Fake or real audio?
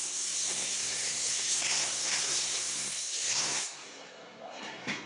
fake